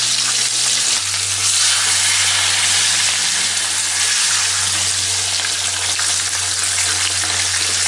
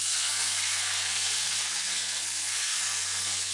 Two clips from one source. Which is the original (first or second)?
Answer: first